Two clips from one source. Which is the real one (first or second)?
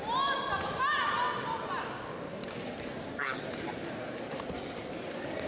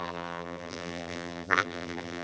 first